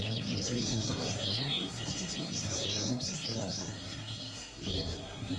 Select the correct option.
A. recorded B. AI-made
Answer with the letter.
B